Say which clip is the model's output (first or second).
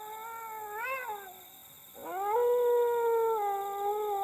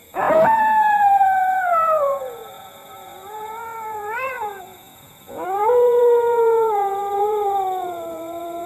second